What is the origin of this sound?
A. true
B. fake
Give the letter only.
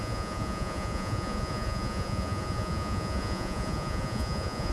B